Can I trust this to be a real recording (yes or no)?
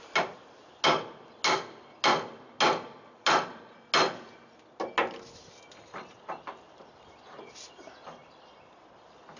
yes